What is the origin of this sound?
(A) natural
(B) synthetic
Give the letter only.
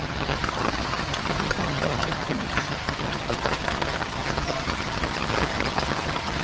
B